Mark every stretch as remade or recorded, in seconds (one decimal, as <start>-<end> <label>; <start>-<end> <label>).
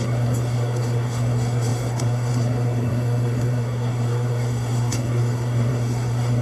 0.0-6.4 remade